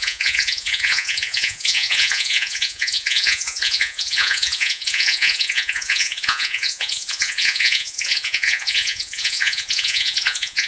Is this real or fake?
fake